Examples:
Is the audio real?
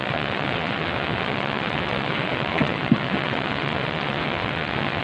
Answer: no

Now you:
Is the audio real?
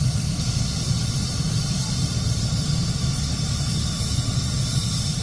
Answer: yes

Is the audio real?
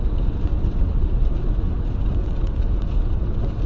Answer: no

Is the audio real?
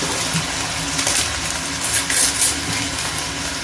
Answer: yes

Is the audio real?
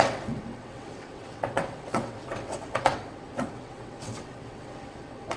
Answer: no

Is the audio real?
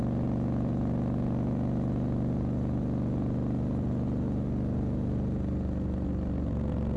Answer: yes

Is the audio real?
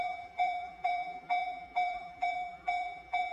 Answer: no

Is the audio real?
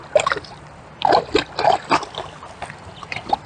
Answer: no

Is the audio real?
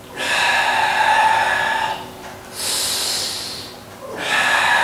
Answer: yes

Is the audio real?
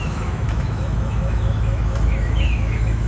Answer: no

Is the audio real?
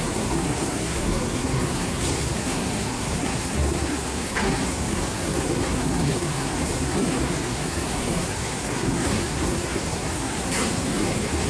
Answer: no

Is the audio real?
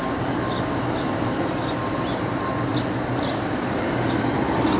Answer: yes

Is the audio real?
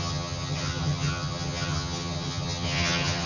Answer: no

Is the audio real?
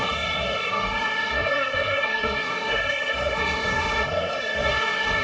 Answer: no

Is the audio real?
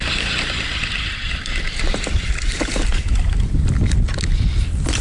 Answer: yes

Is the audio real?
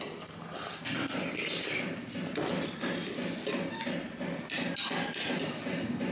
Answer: yes